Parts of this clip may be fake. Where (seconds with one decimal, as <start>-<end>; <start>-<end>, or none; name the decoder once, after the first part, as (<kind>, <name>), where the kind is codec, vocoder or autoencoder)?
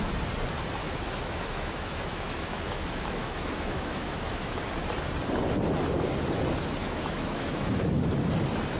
0.8-4.6 (autoencoder, DAC-VAE); 6.8-7.9